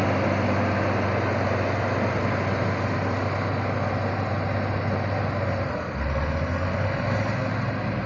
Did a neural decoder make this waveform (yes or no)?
no